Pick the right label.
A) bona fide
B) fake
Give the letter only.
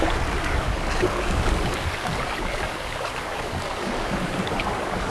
B